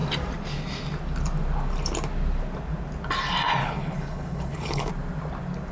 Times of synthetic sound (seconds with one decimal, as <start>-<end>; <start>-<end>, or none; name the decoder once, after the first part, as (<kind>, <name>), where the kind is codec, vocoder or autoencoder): 3.6-4.9 (codec, HILCodec)